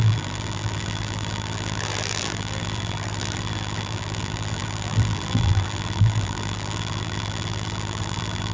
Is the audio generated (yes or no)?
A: yes